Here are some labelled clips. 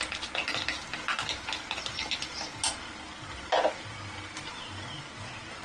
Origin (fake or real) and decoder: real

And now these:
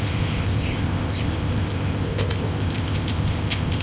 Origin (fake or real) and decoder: fake, codec, ZipCodec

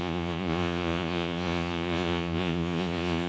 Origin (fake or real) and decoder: fake, vocoder, Vocos